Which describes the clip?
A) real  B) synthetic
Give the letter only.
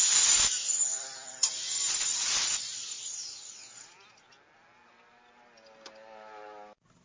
A